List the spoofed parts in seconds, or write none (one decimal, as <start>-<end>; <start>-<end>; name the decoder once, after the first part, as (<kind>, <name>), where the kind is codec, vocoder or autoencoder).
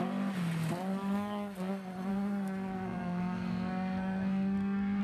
0.9-1.7 (codec, SNAC); 2.1-5.0